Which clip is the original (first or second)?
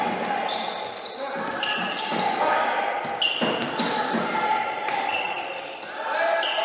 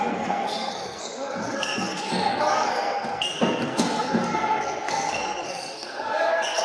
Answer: first